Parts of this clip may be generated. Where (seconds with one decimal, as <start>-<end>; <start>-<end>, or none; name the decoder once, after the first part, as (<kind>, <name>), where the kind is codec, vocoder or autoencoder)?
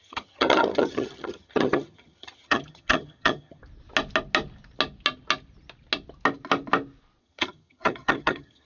0.0-3.6 (vocoder, HiFi-GAN); 7.2-8.6